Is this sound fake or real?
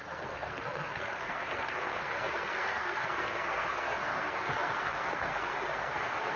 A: fake